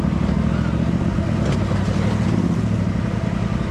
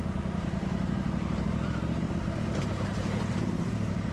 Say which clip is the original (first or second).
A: first